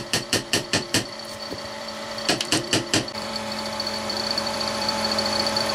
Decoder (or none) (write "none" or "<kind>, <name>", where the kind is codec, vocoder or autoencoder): vocoder, BigVGAN v2